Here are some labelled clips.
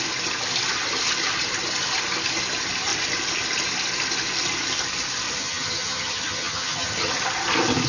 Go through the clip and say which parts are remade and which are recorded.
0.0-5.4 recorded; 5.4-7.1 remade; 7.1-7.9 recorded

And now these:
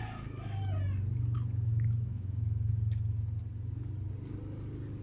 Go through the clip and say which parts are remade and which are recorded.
0.0-1.7 recorded; 1.7-2.7 remade; 2.7-5.0 recorded

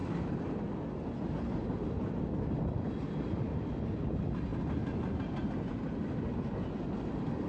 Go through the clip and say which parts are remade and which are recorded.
0.0-7.5 recorded

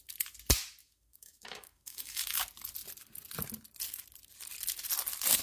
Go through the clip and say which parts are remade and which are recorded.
0.0-0.8 recorded; 0.8-2.4 remade; 2.4-5.4 recorded

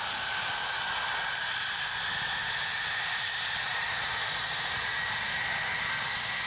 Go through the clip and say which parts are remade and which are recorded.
0.0-6.5 recorded

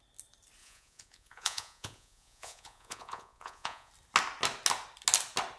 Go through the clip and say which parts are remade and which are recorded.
0.0-0.6 recorded; 0.6-3.9 remade; 3.9-5.6 recorded

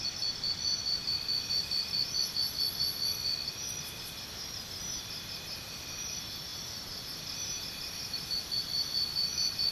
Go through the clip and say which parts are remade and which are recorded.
0.0-9.7 recorded